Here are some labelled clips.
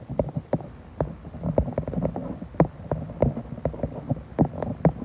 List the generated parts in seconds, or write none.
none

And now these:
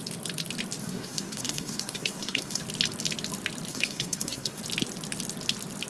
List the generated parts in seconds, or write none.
0.8-2.6 (codec, SNAC); 3.7-4.6

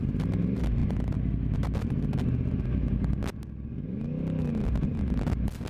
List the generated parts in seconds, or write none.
none